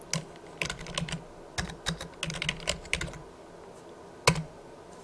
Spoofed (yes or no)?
no